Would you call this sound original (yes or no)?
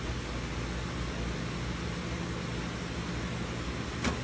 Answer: yes